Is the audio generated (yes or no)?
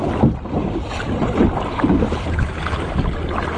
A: no